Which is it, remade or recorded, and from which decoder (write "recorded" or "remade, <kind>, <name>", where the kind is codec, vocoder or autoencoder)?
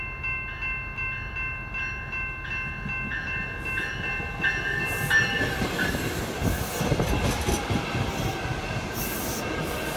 recorded